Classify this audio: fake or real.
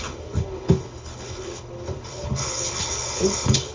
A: fake